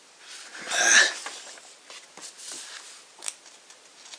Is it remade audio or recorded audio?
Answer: recorded